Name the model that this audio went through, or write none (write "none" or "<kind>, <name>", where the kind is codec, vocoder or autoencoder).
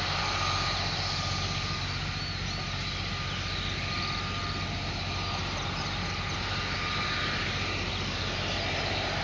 none